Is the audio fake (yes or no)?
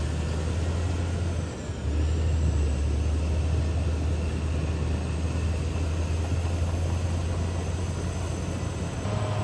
no